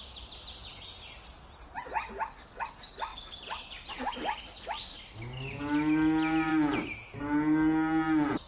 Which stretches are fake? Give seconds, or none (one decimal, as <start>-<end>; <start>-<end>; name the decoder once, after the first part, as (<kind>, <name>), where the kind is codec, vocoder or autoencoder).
none